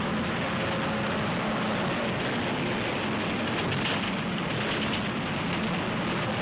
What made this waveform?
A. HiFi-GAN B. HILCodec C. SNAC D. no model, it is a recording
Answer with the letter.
D